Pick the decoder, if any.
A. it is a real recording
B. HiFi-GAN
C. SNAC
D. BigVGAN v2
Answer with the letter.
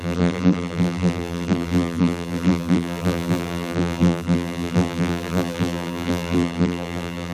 D